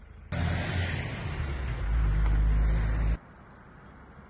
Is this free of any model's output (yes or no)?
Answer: yes